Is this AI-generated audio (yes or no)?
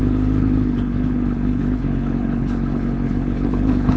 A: yes